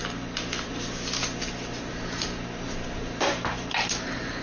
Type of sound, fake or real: real